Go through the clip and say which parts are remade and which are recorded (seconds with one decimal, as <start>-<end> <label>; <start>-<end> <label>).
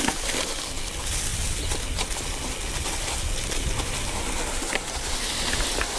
0.0-6.0 recorded